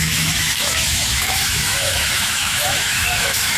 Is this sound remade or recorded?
remade